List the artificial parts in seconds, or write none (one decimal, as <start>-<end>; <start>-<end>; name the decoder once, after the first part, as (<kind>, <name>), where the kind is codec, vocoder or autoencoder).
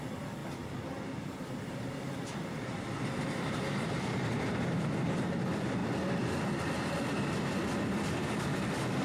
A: none